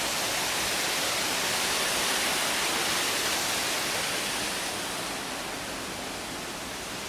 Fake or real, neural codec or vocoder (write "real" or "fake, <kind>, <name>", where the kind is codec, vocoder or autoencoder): real